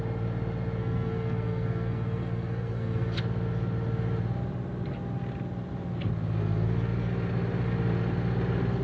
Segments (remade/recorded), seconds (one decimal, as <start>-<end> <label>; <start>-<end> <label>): 0.0-0.8 recorded; 0.8-3.2 remade; 3.2-8.8 recorded